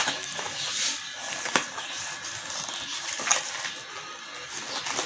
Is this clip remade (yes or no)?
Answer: no